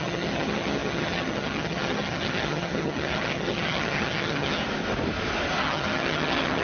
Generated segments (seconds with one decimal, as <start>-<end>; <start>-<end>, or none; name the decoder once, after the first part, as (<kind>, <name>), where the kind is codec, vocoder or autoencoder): 0.0-4.6 (vocoder, HiFi-GAN); 5.6-6.6